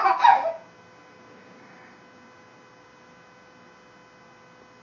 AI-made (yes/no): no